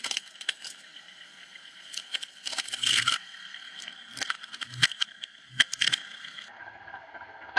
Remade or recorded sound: remade